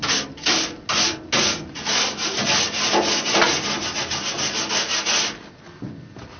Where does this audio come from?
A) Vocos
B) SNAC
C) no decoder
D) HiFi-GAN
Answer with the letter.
C